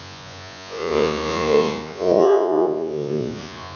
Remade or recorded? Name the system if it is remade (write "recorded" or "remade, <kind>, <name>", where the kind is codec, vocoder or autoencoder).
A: remade, vocoder, Vocos